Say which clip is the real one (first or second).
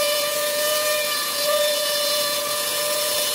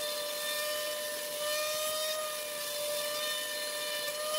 second